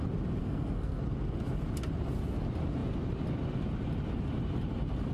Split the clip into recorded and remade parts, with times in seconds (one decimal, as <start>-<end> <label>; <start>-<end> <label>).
0.0-0.4 recorded; 0.4-1.0 remade; 1.0-5.1 recorded